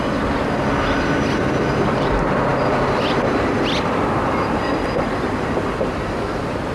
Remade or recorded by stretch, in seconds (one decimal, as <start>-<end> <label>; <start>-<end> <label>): 0.0-1.7 recorded; 1.7-2.5 remade; 2.5-6.7 recorded